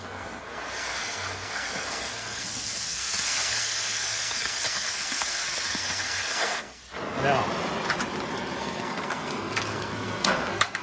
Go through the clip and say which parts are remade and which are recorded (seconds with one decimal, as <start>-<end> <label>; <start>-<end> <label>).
0.0-6.8 remade; 6.8-8.6 recorded; 8.6-10.8 remade